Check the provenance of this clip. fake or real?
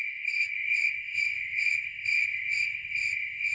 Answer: fake